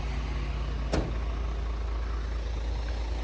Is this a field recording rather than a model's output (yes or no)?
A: yes